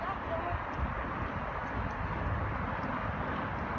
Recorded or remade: recorded